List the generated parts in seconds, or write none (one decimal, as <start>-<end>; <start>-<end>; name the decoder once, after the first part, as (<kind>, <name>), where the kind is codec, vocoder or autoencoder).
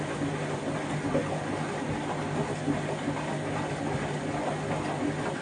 none